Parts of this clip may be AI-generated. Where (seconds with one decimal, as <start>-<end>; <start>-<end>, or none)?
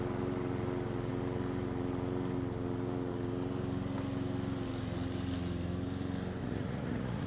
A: 6.4-7.3